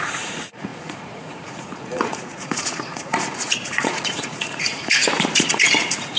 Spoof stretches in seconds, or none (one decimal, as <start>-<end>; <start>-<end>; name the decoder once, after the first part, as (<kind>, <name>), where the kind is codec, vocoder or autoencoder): 0.0-5.0 (vocoder, Vocos); 5.5-6.2